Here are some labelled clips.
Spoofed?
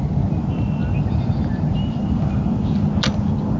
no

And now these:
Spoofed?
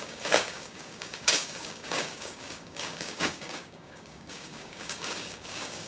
yes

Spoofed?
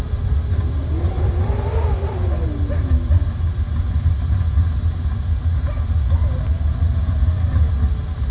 no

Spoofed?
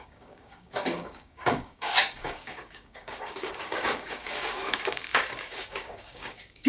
yes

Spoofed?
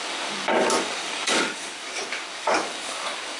yes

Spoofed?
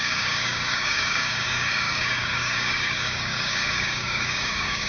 yes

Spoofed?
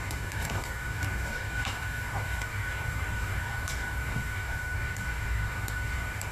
yes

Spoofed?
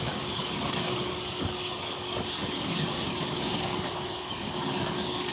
yes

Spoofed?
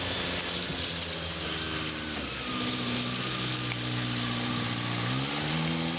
no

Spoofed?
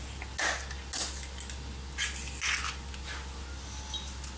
no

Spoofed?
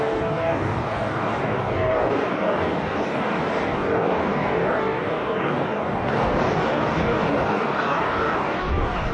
yes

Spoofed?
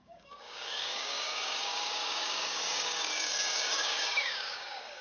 yes